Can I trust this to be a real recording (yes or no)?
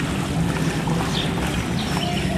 yes